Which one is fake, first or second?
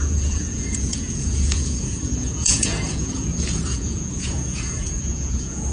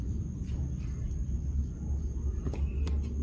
first